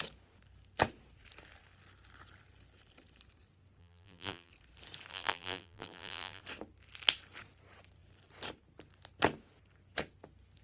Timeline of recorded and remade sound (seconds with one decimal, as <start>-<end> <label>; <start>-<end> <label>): 0.0-3.8 recorded; 3.8-4.5 remade; 4.5-5.1 recorded; 5.1-6.4 remade; 6.4-10.6 recorded